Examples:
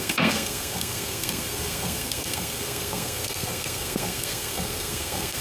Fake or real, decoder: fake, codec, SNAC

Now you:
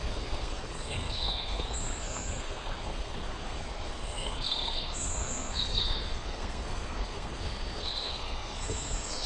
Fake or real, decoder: fake, codec, SNAC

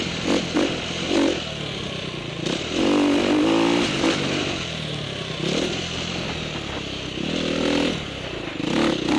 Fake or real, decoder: real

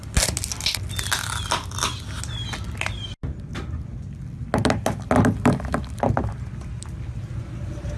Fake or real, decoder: real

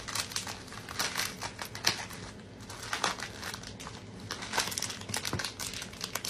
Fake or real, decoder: real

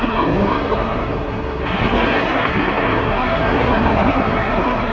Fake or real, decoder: fake, codec, SNAC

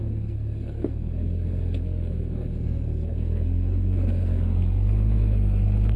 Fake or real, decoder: fake, codec, SNAC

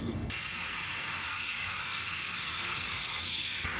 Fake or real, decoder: fake, codec, SNAC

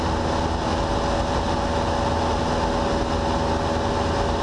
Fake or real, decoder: real